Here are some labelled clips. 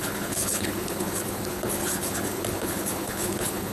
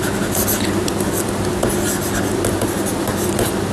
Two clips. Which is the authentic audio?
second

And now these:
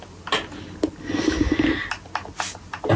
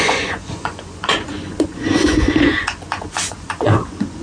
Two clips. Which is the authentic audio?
first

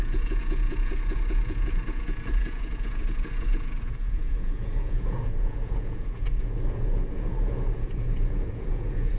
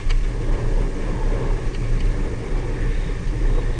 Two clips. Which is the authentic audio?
second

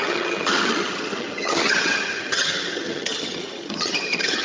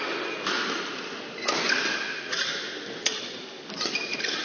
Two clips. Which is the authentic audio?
second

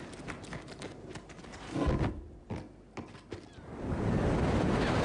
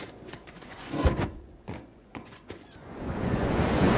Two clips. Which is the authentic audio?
first